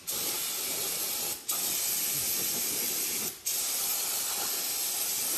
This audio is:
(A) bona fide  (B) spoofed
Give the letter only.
A